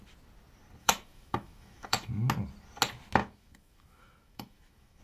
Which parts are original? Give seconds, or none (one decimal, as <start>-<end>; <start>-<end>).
0.0-0.8; 2.1-3.2